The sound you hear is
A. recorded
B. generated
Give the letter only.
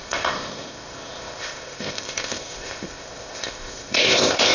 B